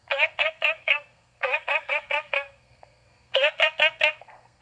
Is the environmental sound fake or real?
fake